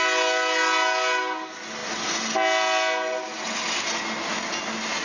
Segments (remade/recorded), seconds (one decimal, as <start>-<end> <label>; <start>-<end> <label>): 0.0-5.0 recorded